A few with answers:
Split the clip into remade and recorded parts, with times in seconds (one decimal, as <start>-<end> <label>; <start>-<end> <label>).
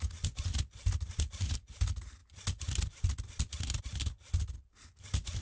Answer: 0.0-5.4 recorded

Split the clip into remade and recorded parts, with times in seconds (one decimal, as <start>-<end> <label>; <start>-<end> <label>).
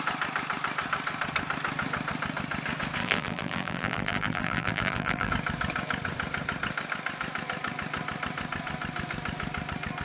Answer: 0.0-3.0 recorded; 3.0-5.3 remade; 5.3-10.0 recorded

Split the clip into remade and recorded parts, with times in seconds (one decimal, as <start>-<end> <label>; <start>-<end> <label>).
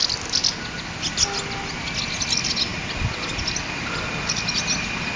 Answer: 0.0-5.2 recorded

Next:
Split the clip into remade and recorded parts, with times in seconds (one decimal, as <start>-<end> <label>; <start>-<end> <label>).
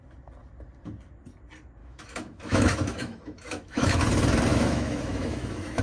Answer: 0.0-1.8 recorded; 1.8-4.0 remade; 4.0-4.5 recorded; 4.5-5.8 remade